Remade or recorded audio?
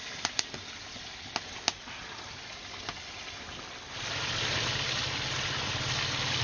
recorded